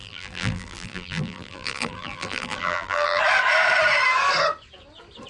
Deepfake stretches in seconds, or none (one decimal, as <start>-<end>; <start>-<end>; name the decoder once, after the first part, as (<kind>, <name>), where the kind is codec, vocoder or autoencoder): 0.0-3.2 (vocoder, BigVGAN v2)